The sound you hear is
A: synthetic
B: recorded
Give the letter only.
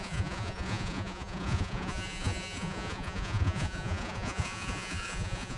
A